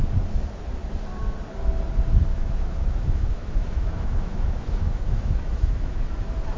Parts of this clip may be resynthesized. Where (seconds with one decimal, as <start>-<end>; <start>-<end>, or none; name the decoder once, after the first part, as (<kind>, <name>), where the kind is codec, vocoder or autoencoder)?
2.3-6.0 (autoencoder, DAC-VAE)

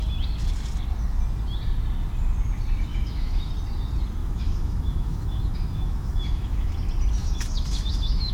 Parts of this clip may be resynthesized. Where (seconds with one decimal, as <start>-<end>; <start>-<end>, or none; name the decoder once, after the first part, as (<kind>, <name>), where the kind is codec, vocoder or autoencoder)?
2.9-3.5 (autoencoder, DAC-VAE); 4.2-6.7; 7.2-8.3

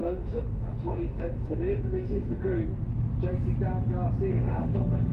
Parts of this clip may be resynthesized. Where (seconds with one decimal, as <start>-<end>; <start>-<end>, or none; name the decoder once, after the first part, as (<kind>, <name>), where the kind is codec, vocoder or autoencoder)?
0.0-2.6 (autoencoder, DAC-VAE); 4.3-5.1

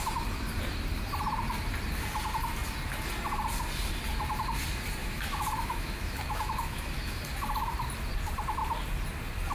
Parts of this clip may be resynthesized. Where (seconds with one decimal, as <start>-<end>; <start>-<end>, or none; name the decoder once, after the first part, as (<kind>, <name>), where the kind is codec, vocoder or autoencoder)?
5.0-7.2 (autoencoder, DAC-VAE)